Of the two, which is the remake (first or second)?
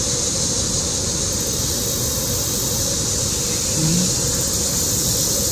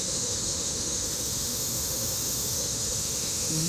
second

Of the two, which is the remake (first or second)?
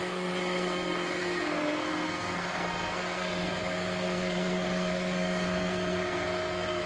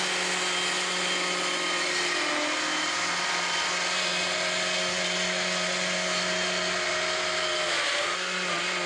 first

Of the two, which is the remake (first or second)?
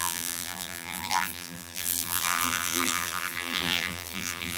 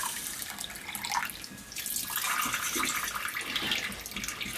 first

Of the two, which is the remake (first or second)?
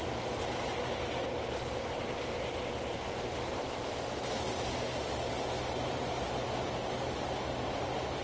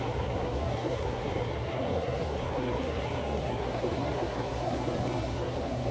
second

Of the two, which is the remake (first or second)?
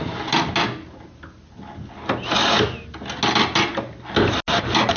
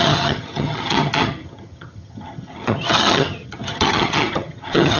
second